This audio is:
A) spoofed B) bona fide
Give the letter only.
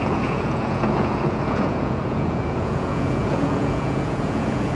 A